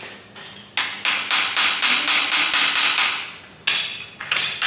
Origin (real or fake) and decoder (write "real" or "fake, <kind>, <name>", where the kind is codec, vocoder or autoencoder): real